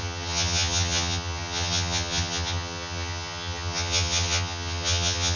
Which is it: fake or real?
fake